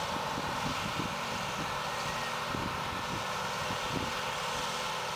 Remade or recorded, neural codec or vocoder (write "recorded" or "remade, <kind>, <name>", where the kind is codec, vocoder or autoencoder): recorded